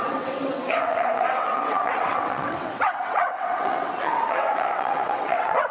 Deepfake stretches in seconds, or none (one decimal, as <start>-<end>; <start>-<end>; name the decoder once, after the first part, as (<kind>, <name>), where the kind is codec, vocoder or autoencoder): 0.0-5.7 (vocoder, WaveNeXt)